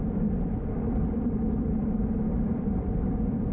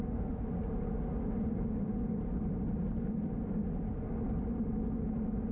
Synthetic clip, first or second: first